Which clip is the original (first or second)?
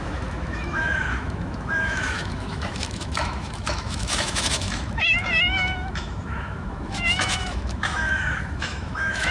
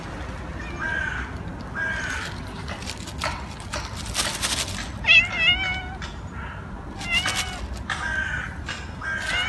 second